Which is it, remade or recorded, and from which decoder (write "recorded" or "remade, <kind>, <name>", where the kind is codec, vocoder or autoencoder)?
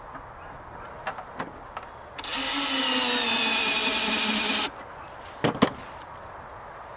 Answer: recorded